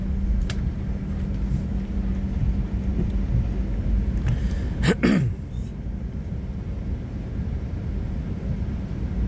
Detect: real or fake real